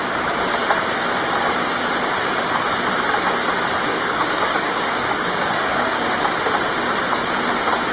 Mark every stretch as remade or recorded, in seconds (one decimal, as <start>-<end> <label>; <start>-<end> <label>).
0.0-3.9 recorded; 3.9-6.1 remade; 6.1-7.9 recorded